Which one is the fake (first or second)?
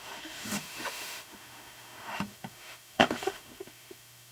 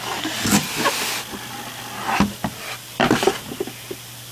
first